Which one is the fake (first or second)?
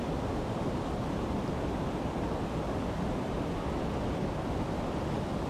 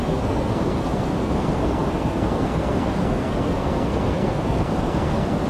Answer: second